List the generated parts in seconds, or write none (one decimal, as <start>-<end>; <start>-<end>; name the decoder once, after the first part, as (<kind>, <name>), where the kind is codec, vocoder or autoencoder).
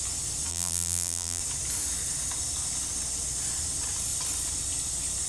0.5-1.4 (vocoder, BigVGAN v2)